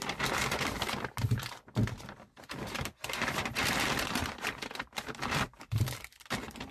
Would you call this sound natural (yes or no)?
no